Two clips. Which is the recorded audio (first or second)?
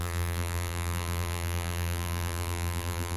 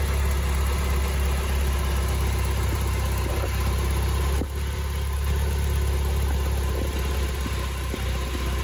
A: second